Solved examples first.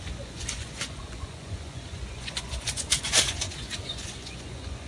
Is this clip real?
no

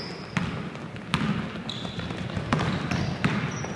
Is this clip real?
yes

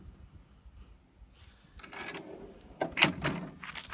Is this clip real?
yes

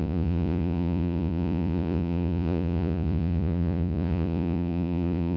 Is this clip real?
no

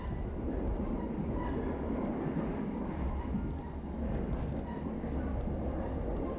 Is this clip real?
yes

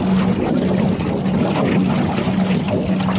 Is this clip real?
yes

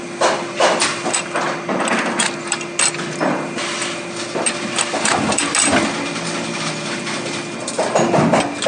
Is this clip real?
yes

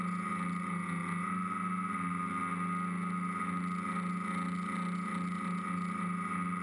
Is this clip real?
yes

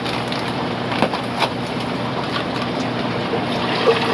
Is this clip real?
yes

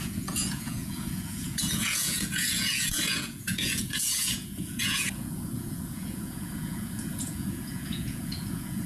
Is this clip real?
no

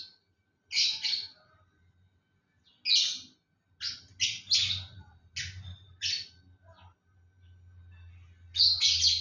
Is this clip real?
yes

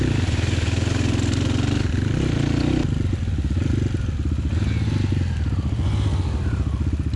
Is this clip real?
yes